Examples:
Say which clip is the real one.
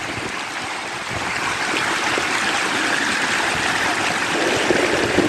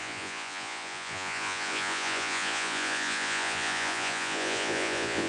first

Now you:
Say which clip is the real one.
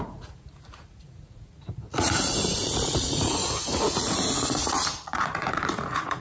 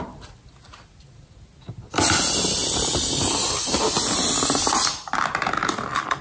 second